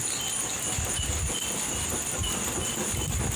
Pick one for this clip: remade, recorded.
recorded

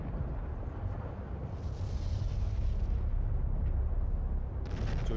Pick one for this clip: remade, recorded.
recorded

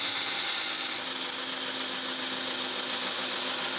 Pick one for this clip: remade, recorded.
recorded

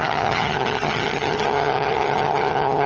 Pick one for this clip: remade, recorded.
remade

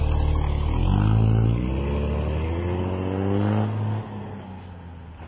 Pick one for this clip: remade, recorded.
recorded